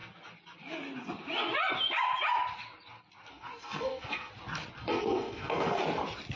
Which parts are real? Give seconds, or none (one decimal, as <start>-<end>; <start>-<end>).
0.0-3.3; 4.3-4.8; 5.8-6.4